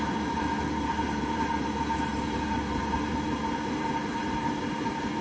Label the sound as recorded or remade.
remade